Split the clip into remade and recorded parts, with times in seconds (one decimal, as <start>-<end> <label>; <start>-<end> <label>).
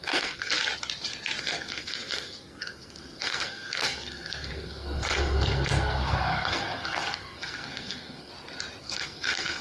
0.0-0.5 remade; 0.5-1.4 recorded; 1.4-8.3 remade; 8.3-8.8 recorded; 8.8-9.6 remade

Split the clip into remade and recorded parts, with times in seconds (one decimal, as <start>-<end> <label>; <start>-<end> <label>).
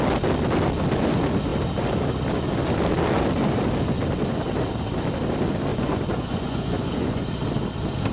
0.0-5.7 recorded; 5.7-7.2 remade; 7.2-8.1 recorded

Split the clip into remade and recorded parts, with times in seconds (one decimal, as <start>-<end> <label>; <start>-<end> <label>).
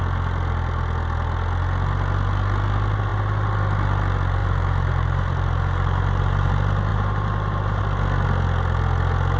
0.0-4.4 recorded; 4.4-6.5 remade; 6.5-6.9 recorded; 6.9-7.8 remade; 7.8-9.4 recorded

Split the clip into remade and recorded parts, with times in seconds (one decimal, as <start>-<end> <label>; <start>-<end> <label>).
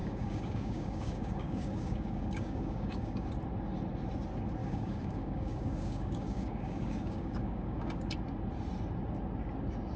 0.0-3.3 remade; 3.3-4.6 recorded; 4.6-8.1 remade; 8.1-10.0 recorded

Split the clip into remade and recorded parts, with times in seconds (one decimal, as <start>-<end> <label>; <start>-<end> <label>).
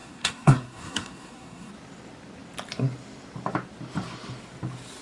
0.0-1.7 remade; 1.7-5.0 recorded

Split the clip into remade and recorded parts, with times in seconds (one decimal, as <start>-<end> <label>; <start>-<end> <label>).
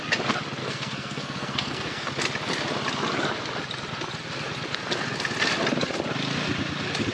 0.0-0.6 recorded; 0.6-2.1 remade; 2.1-7.1 recorded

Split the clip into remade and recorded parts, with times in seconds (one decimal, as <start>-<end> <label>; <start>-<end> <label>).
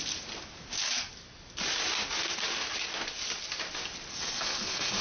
0.0-4.1 recorded; 4.1-5.0 remade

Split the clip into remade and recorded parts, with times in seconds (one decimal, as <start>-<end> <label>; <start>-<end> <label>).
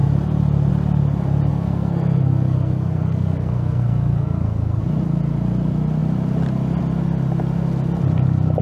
0.0-1.5 recorded; 1.5-4.8 remade; 4.8-8.6 recorded